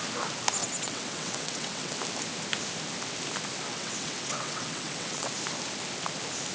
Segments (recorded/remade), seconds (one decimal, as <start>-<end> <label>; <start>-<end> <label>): 0.0-0.6 recorded; 0.6-1.9 remade; 1.9-3.7 recorded; 3.7-5.3 remade; 5.3-6.5 recorded